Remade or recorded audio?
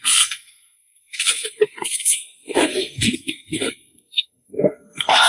remade